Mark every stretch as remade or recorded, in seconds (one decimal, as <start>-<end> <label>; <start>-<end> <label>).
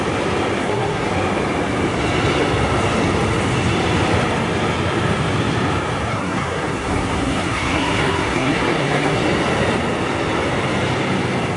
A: 0.0-0.6 recorded; 0.6-1.1 remade; 1.1-6.1 recorded; 6.1-9.2 remade; 9.2-11.6 recorded